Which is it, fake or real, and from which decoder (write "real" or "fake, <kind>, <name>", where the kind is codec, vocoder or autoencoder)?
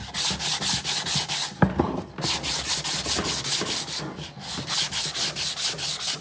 real